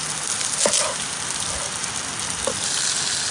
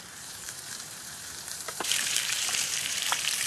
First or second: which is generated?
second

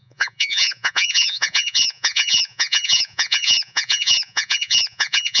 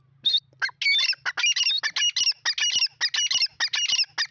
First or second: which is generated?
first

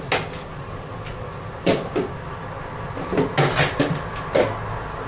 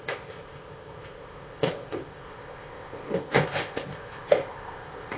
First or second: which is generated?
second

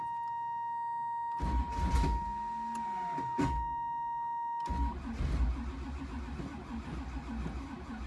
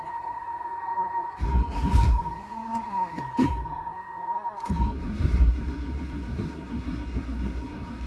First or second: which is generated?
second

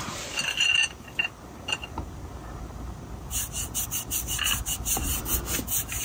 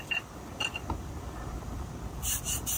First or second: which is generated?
second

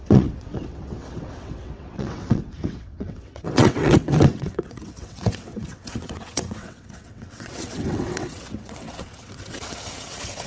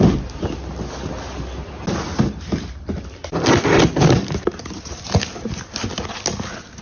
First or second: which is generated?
first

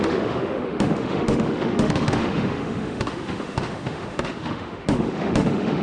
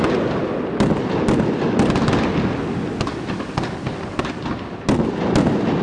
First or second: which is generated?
first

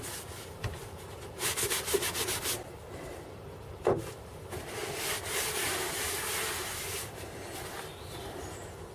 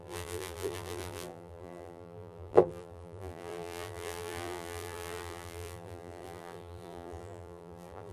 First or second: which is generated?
second